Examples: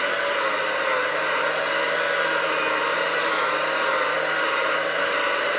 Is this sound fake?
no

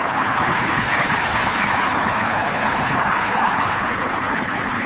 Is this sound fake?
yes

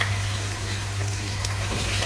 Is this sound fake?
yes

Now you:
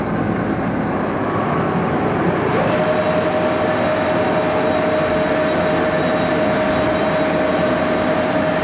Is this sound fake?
no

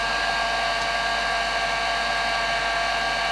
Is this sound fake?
no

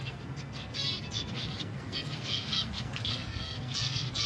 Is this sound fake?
yes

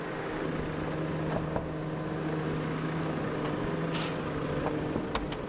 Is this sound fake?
no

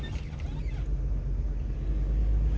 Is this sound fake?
no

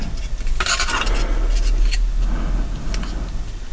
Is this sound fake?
no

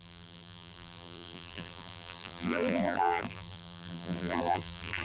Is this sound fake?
yes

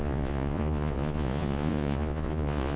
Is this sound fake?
yes